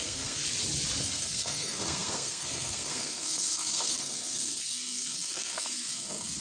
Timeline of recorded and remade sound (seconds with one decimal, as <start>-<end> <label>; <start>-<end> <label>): 0.0-0.4 remade; 0.4-1.0 recorded; 1.0-6.4 remade